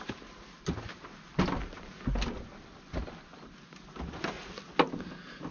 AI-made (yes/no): no